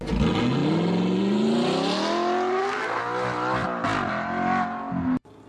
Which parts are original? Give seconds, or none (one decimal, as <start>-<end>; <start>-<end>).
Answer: 0.0-2.5; 3.0-5.5